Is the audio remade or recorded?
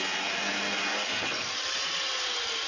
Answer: recorded